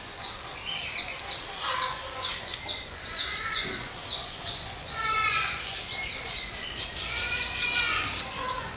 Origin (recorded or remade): remade